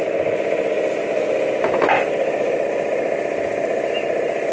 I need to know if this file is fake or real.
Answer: real